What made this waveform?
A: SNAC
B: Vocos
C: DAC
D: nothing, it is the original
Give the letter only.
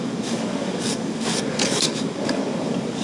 C